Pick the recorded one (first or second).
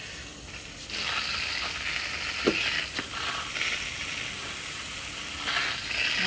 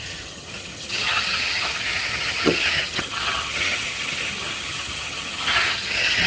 first